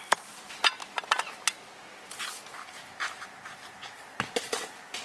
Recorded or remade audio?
recorded